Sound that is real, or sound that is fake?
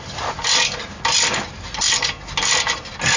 real